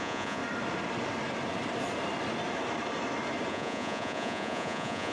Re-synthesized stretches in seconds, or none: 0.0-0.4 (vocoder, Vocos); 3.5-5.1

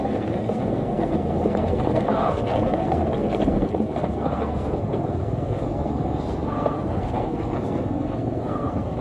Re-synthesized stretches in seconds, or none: 0.0-9.0 (codec, SNAC)

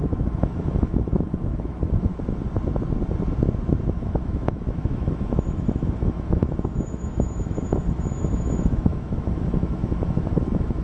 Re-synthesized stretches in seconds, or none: 0.0-2.1 (autoencoder, DAC-VAE); 3.9-10.8

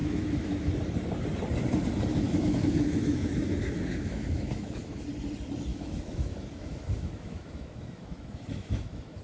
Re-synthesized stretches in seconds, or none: 0.0-0.7 (autoencoder, DAC-VAE); 2.1-5.0; 5.7-9.2

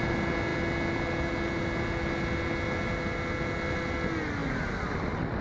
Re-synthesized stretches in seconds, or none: none